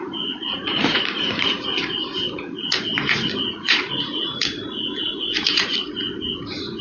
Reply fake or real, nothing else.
fake